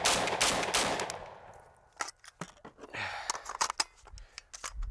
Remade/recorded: recorded